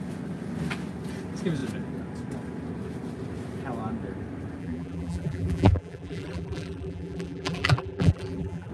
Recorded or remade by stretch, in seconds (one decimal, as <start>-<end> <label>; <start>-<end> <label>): 0.0-4.6 recorded; 4.6-8.7 remade